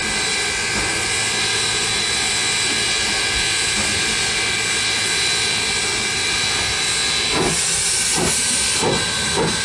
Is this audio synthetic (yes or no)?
no